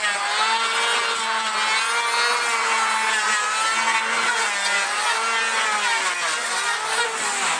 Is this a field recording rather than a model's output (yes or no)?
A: yes